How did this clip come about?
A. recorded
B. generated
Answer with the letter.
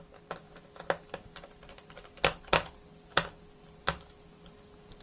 A